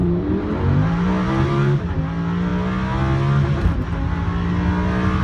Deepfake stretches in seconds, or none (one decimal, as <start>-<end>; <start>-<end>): 0.0-2.0